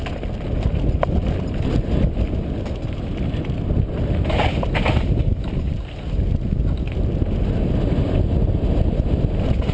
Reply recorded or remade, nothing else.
recorded